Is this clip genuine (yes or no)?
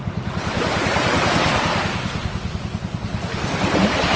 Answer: yes